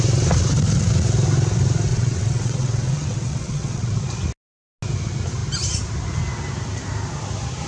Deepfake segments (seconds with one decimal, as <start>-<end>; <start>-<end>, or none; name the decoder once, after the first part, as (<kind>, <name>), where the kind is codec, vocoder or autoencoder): 1.9-4.0 (vocoder, WaveNeXt)